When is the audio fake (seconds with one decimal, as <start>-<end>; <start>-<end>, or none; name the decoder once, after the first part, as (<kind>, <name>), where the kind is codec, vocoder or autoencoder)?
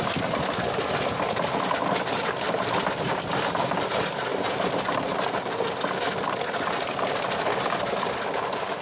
none